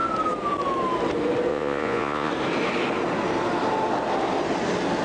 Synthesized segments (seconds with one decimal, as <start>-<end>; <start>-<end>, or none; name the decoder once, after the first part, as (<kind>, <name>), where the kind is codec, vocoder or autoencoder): 1.5-2.3 (vocoder, Vocos)